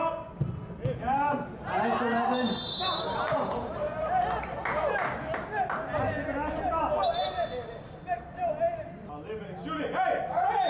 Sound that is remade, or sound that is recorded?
recorded